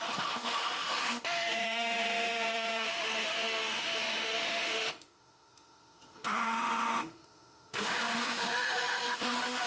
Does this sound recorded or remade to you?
remade